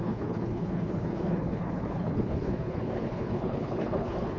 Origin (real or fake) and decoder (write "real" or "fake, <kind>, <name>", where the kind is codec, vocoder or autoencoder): fake, codec, HILCodec